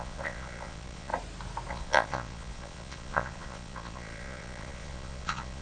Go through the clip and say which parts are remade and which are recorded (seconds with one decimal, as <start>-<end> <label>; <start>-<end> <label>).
0.0-1.1 remade; 1.1-1.7 recorded; 1.7-5.6 remade